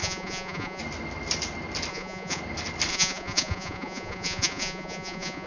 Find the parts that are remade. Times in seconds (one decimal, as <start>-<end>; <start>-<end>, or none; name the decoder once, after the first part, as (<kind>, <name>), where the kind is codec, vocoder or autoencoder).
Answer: 0.0-0.8 (vocoder, Vocos); 1.9-2.4; 2.9-5.5